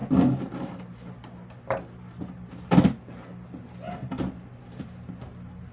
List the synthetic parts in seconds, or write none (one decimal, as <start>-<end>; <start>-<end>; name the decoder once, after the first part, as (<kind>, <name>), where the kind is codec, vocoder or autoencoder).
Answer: 4.5-5.2 (vocoder, BigVGAN v2)